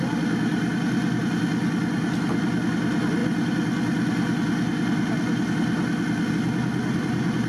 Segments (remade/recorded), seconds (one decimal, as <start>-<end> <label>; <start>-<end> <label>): 0.0-7.5 recorded